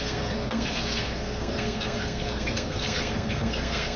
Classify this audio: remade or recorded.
remade